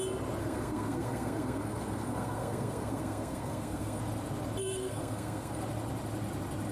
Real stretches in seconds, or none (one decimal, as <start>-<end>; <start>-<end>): 0.0-0.4; 4.0-4.6; 5.6-6.7